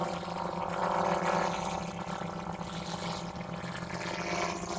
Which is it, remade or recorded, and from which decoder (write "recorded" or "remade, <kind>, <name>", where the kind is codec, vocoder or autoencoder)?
recorded